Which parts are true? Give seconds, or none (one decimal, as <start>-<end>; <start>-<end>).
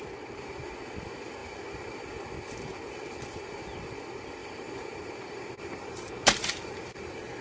0.0-4.4; 7.0-7.4